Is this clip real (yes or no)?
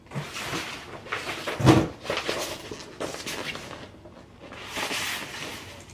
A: yes